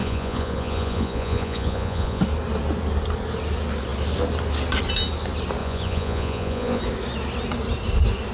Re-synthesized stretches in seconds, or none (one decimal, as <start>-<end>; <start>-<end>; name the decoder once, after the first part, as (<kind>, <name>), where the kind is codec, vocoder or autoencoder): 0.0-2.2 (vocoder, Vocos); 5.6-6.8